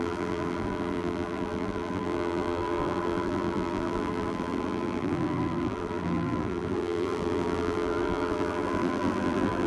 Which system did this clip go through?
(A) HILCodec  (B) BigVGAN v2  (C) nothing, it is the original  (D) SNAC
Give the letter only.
B